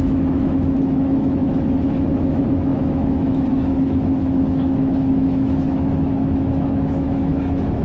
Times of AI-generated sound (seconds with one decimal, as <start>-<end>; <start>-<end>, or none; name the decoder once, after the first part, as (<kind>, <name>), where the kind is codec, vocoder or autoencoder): 0.0-7.8 (autoencoder, DAC-VAE)